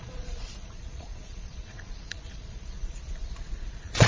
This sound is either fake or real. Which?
fake